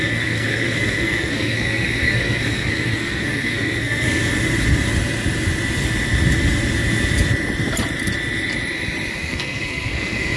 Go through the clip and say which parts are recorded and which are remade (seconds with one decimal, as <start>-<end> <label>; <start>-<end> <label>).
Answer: 0.0-4.2 remade; 4.2-9.1 recorded; 9.1-10.4 remade